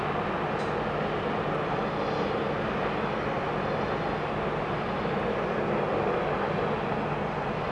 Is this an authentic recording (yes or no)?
yes